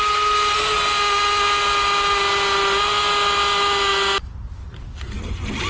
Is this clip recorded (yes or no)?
yes